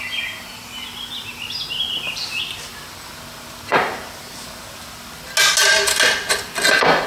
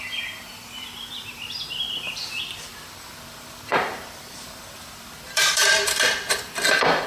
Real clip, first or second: first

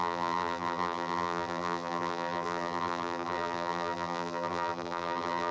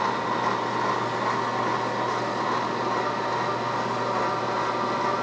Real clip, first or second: second